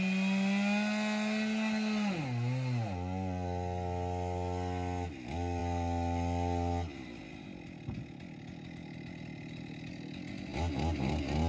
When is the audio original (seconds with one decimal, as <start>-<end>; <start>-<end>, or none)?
0.0-11.5